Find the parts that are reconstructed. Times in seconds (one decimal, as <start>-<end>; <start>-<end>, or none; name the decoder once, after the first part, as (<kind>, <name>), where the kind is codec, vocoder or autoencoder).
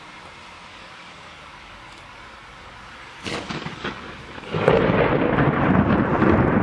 0.7-4.7 (codec, DAC)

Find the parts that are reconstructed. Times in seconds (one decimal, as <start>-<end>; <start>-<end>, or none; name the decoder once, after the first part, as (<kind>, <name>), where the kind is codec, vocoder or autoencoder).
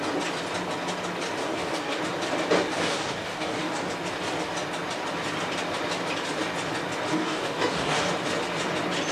1.4-2.0 (codec, DAC); 2.9-3.9; 7.1-8.0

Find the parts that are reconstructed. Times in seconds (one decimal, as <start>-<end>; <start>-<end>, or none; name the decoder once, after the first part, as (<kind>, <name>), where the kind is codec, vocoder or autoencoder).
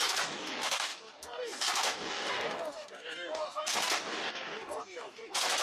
0.0-5.6 (codec, DAC)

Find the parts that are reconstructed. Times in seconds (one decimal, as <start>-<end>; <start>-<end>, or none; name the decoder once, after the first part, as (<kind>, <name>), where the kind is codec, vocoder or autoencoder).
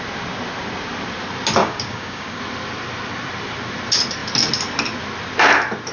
1.6-2.4 (codec, DAC)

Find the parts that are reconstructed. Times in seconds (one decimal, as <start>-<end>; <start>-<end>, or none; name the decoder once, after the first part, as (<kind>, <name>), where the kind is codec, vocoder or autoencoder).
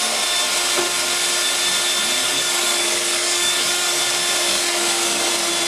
2.2-4.0 (codec, DAC); 4.5-5.3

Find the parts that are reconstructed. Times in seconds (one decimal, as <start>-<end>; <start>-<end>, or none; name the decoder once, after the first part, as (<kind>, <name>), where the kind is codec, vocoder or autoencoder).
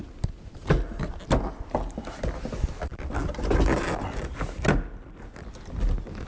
none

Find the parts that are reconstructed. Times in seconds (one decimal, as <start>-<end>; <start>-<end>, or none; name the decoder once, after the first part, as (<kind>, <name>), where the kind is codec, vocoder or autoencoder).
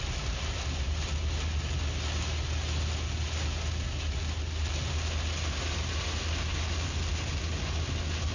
none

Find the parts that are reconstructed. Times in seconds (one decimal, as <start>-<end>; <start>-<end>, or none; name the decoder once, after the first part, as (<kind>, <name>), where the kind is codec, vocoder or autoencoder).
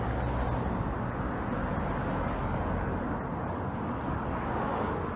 2.0-5.2 (codec, DAC)